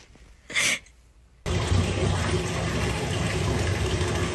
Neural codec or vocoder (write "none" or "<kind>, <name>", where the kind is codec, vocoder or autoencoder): none